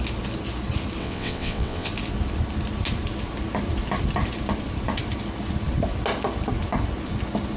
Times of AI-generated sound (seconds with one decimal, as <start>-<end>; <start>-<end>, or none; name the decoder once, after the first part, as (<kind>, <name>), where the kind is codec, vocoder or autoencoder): 1.0-1.9 (vocoder, WaveNeXt)